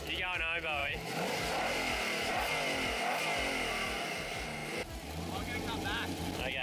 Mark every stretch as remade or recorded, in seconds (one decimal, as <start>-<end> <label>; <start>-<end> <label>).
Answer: 0.0-0.8 recorded; 0.8-2.3 remade; 2.3-6.6 recorded

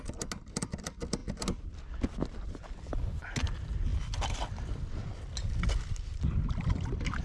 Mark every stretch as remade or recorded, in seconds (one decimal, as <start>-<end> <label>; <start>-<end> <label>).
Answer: 0.0-7.2 recorded

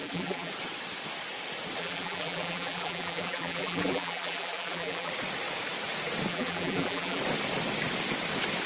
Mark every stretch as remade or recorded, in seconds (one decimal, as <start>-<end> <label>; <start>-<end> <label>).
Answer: 0.0-0.5 remade; 0.5-1.8 recorded; 1.8-5.1 remade; 5.1-6.3 recorded; 6.3-7.2 remade; 7.2-8.7 recorded

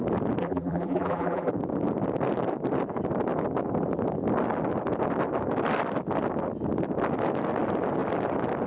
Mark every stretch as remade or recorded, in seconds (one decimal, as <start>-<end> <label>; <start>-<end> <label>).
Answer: 0.0-0.4 recorded; 0.4-1.5 remade; 1.5-8.7 recorded

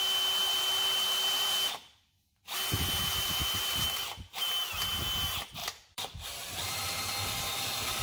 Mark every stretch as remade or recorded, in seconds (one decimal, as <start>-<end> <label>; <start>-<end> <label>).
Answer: 0.0-0.4 recorded; 0.4-1.7 remade; 1.7-3.1 recorded; 3.1-4.0 remade; 4.0-5.6 recorded; 5.6-8.0 remade

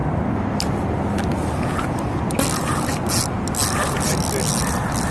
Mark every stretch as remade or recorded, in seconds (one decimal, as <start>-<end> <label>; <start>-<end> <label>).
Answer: 0.0-5.1 recorded

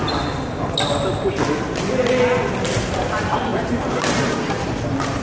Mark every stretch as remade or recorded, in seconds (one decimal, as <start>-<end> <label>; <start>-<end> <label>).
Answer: 0.0-3.1 recorded; 3.1-5.2 remade